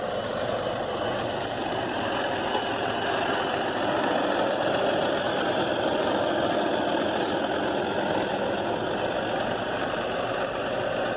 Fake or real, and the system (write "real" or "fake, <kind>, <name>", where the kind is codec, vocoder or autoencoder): real